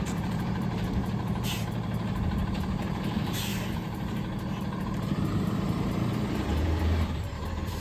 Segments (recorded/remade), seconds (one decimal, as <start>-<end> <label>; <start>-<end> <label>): 0.0-3.5 remade; 3.5-4.8 recorded; 4.8-7.8 remade